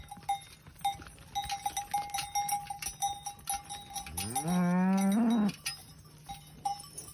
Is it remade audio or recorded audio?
recorded